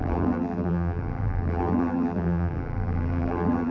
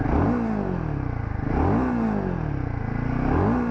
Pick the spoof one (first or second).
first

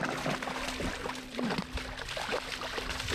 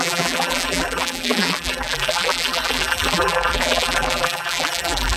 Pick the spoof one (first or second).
second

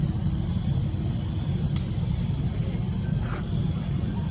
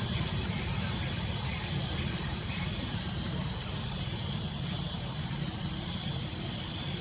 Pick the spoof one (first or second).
second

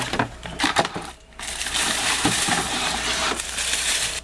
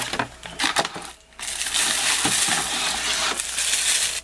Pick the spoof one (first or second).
first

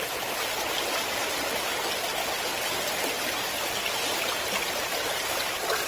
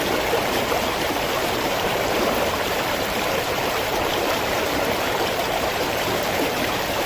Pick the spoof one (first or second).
second